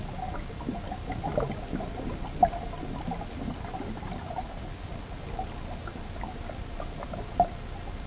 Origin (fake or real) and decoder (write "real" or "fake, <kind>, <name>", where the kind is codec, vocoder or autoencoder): real